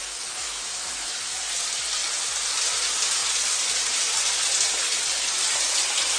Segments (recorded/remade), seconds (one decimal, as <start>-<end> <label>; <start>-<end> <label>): 0.0-1.4 remade; 1.4-6.2 recorded